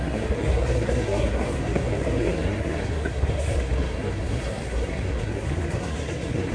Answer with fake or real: fake